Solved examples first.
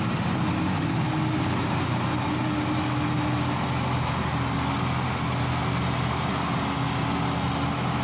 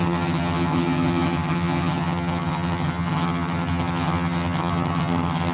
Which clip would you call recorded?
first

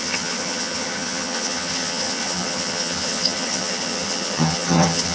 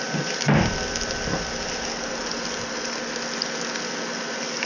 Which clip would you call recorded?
second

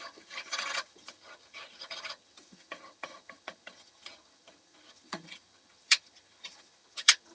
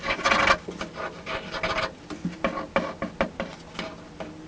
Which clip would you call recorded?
second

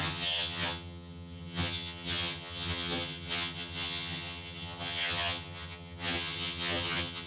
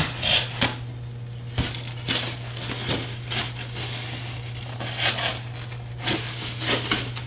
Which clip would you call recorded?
second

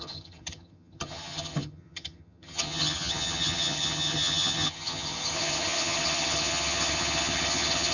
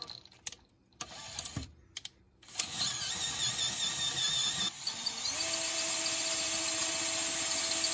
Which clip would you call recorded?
second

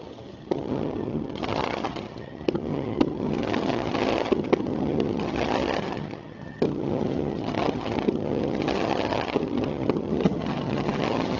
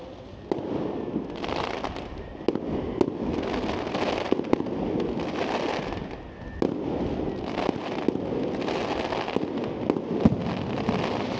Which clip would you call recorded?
second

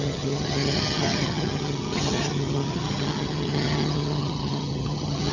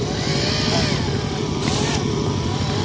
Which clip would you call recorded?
second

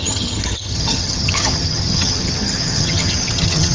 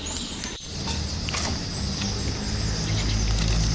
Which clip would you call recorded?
second